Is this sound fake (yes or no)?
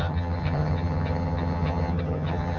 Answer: yes